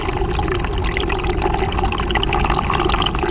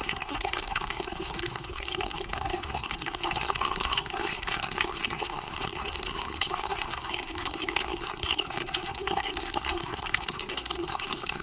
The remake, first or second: second